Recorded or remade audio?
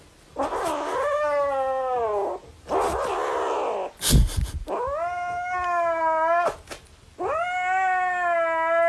recorded